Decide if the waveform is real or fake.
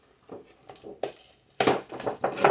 real